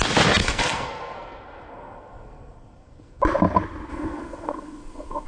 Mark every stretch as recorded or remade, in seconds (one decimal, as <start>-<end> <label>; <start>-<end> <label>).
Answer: 0.0-0.4 recorded; 0.4-3.2 remade; 3.2-3.9 recorded; 3.9-5.3 remade